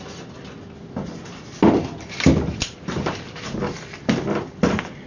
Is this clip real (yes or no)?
yes